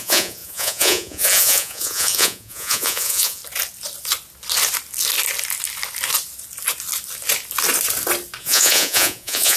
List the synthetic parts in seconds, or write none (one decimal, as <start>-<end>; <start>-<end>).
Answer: 0.0-3.4; 8.4-9.6